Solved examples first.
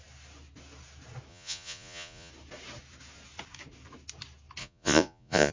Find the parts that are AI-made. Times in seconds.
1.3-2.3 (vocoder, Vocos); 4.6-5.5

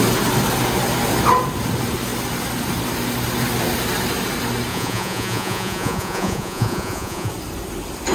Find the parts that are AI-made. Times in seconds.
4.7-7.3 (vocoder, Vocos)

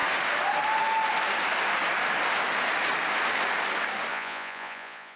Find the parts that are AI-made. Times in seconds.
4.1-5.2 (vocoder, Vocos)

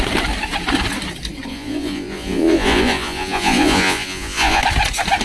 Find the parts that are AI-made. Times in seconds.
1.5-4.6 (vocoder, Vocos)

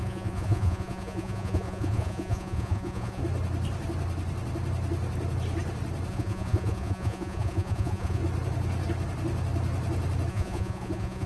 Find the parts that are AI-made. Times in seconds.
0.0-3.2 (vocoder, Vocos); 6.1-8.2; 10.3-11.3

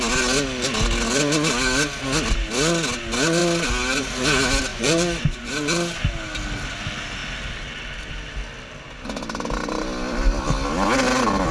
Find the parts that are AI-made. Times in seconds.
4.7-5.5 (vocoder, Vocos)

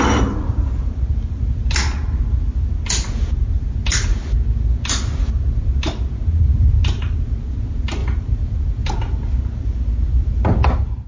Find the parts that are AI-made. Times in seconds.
none

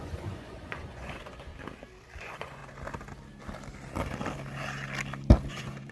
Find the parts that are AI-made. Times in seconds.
0.0-1.5 (vocoder, Vocos); 2.2-2.6; 5.5-5.9